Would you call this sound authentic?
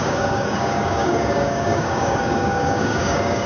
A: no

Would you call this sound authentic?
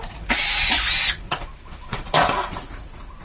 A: no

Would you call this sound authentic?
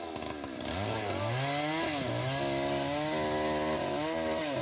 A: yes